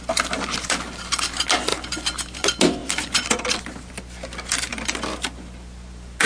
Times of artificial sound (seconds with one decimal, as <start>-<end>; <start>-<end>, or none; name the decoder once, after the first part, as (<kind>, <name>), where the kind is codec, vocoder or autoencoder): none